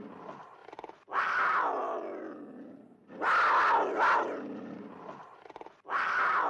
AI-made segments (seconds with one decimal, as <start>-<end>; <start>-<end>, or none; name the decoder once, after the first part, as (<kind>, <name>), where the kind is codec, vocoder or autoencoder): none